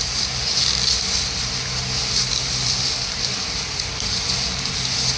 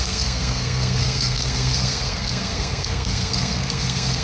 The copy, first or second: second